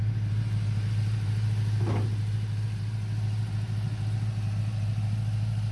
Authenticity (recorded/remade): recorded